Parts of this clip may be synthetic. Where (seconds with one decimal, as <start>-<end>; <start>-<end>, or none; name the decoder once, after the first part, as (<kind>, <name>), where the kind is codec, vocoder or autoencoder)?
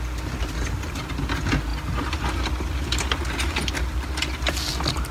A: none